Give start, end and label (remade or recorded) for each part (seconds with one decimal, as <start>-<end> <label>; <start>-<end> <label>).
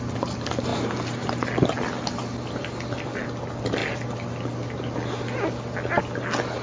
0.0-6.6 recorded